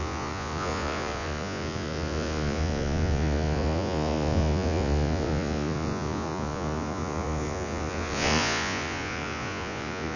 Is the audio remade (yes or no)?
yes